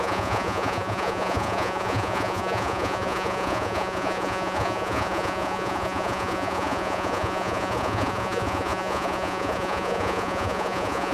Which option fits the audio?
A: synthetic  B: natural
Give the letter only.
A